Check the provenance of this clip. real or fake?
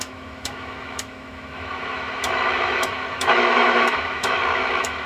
fake